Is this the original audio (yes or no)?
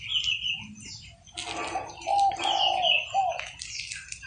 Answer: yes